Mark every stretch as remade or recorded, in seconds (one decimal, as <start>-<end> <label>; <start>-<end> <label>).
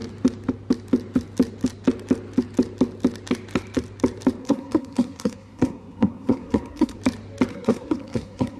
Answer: 0.0-4.4 recorded; 4.4-7.0 remade; 7.0-7.5 recorded; 7.5-8.6 remade